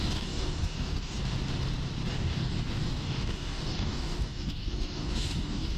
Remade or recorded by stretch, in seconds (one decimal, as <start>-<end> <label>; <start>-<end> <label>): 0.0-1.2 remade; 1.2-2.1 recorded; 2.1-5.8 remade